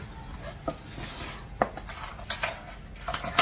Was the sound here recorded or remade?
recorded